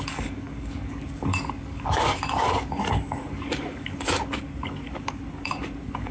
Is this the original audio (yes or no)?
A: no